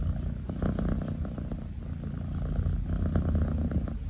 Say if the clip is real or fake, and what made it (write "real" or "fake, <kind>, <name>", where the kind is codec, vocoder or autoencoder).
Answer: real